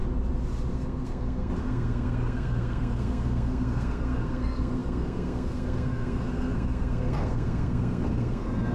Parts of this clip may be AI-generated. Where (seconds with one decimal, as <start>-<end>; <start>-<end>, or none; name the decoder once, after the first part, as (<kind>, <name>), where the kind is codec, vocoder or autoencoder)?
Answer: 0.7-8.7 (codec, SNAC)